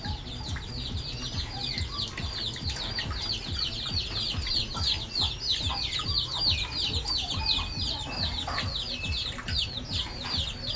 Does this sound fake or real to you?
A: real